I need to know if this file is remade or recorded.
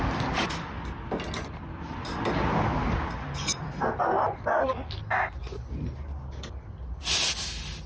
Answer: recorded